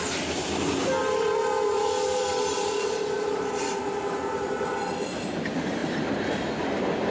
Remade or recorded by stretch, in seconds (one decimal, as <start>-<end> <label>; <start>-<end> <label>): 0.0-1.0 recorded; 1.0-5.3 remade; 5.3-5.8 recorded; 5.8-6.5 remade; 6.5-7.1 recorded